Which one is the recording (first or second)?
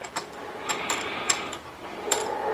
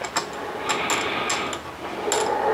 second